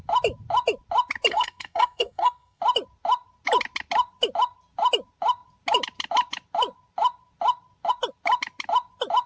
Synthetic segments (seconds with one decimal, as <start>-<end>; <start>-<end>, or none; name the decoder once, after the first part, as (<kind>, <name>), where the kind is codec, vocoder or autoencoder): 1.3-2.6 (codec, SNAC)